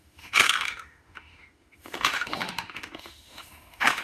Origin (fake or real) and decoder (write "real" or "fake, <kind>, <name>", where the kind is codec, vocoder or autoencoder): fake, autoencoder, DAC-VAE